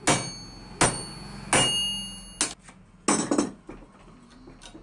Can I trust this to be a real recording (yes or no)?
yes